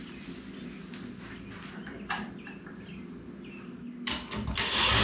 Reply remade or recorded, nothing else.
recorded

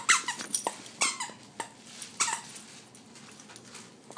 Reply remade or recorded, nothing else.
recorded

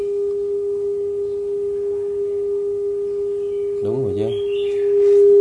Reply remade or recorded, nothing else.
recorded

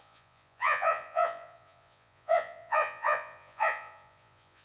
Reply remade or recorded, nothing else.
remade